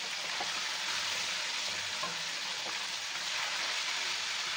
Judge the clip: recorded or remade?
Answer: recorded